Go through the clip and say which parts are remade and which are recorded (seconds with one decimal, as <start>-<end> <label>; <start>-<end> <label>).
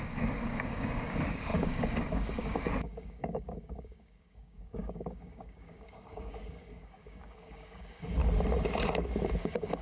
0.0-8.2 remade; 8.2-9.4 recorded; 9.4-9.8 remade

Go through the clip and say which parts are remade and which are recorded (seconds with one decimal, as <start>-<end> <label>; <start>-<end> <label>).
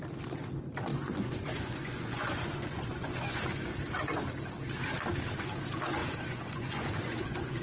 0.0-0.9 recorded; 0.9-3.4 remade; 3.4-6.0 recorded; 6.0-7.6 remade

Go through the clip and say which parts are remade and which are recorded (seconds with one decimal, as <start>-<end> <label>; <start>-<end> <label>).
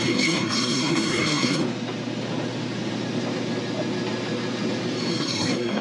0.0-1.6 remade; 1.6-5.1 recorded; 5.1-5.8 remade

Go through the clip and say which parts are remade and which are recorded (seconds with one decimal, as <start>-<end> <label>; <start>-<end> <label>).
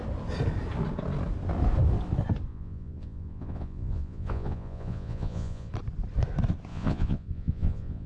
0.0-2.5 recorded; 2.5-5.7 remade; 5.7-6.7 recorded; 6.7-8.1 remade